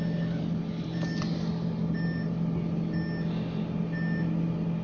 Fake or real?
real